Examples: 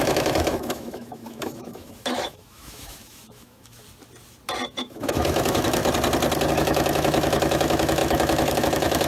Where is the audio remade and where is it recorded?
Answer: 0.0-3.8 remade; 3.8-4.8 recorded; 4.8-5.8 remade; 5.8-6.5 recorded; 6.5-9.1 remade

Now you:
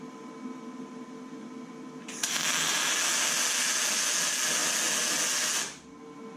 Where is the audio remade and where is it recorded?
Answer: 0.0-6.4 recorded

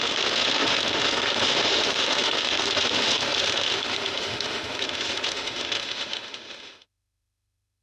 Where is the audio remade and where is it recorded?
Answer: 0.0-7.8 remade

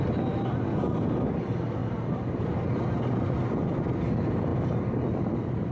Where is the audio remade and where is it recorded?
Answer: 0.0-5.7 recorded

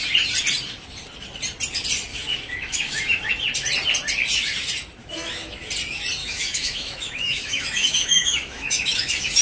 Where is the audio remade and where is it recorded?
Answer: 0.0-2.1 recorded; 2.1-3.3 remade; 3.3-5.0 recorded; 5.0-5.7 remade; 5.7-6.2 recorded; 6.2-9.4 remade

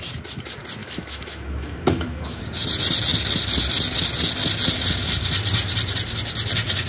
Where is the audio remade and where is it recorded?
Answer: 0.0-0.8 recorded; 0.8-2.4 remade; 2.4-6.9 recorded

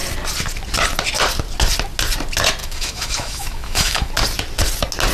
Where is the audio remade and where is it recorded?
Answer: 0.0-2.6 recorded; 2.6-4.1 remade; 4.1-5.1 recorded

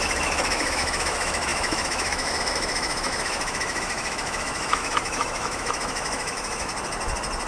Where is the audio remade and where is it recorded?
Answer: 0.0-6.7 remade; 6.7-7.5 recorded